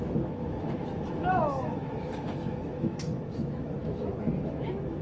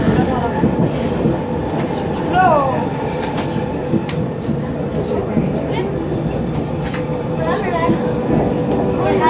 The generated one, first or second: first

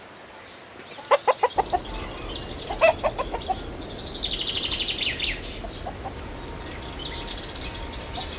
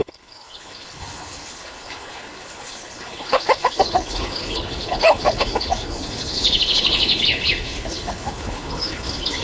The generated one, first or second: second